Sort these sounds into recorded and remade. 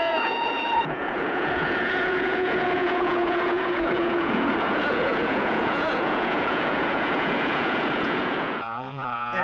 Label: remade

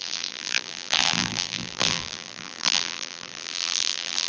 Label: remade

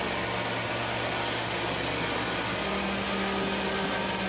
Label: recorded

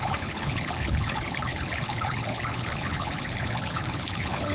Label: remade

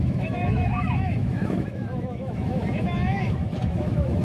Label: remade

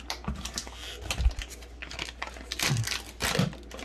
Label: recorded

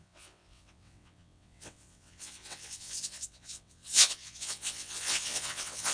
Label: remade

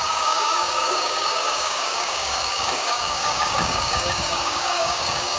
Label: remade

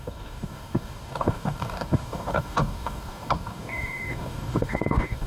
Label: remade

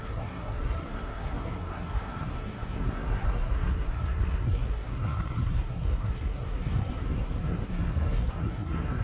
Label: remade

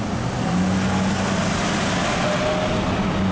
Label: recorded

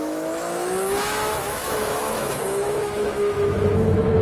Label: remade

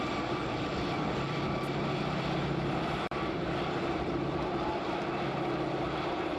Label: remade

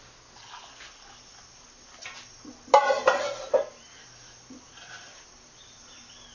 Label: recorded